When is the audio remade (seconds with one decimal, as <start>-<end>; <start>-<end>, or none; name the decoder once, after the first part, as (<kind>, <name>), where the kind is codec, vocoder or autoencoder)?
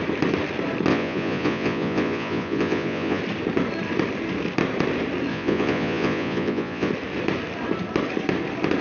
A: 0.9-3.2 (vocoder, Vocos); 5.3-6.9